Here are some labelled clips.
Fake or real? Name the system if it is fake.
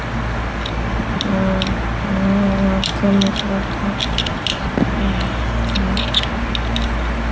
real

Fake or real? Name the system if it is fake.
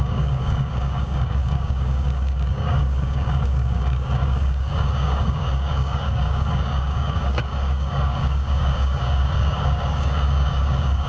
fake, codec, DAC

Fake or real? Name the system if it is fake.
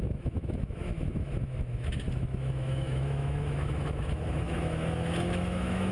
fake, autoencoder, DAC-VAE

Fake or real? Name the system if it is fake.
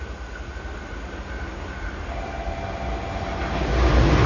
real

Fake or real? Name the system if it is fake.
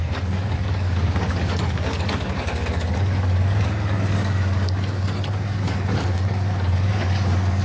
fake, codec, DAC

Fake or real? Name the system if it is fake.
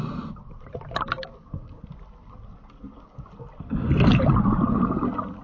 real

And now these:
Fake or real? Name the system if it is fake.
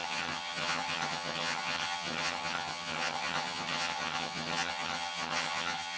fake, vocoder, HiFi-GAN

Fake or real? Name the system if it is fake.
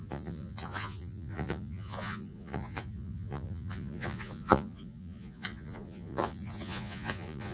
fake, vocoder, Vocos